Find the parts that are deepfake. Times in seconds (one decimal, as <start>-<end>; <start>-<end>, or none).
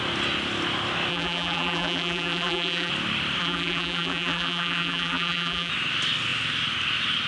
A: 1.1-2.9; 3.4-5.7